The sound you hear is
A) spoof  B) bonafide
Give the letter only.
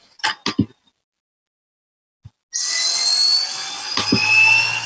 B